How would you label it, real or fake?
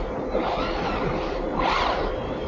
real